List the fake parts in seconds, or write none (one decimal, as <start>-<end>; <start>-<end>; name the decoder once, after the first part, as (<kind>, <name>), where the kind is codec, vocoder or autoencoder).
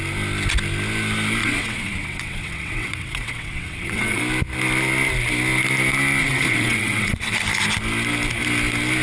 1.4-4.2 (vocoder, WaveNeXt); 6.2-7.4